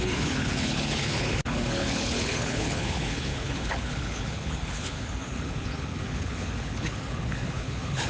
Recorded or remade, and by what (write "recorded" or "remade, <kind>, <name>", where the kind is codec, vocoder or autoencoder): remade, codec, HILCodec